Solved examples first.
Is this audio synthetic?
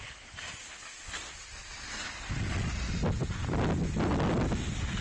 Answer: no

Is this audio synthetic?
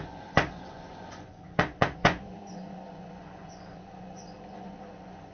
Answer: yes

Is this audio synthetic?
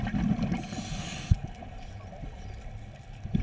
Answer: no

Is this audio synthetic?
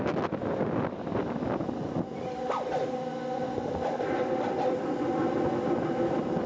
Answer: no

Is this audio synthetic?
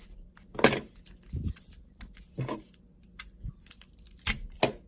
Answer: yes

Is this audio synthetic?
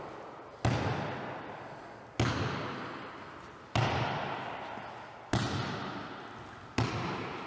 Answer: no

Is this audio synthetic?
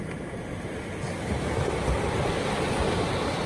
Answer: no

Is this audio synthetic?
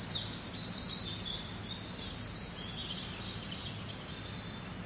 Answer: no